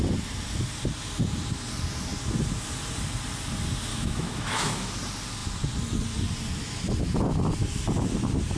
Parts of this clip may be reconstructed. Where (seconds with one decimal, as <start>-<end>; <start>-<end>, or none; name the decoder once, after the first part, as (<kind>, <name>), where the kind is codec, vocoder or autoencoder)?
3.9-4.9 (autoencoder, DAC-VAE)